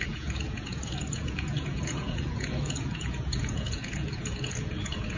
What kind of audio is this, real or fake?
fake